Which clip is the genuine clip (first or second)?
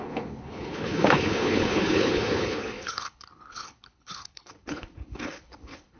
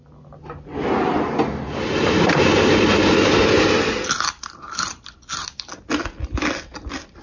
second